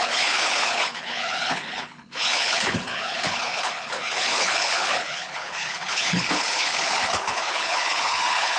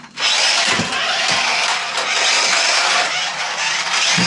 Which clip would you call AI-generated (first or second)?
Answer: first